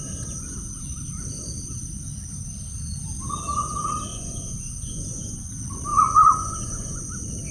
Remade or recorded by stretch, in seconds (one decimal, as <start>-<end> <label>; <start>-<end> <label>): 0.0-4.1 recorded; 4.1-5.5 remade; 5.5-5.9 recorded; 5.9-7.1 remade; 7.1-7.5 recorded